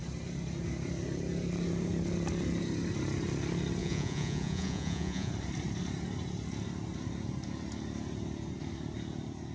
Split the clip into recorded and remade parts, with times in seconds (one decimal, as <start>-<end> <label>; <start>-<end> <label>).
0.0-3.8 recorded; 3.8-5.3 remade; 5.3-9.5 recorded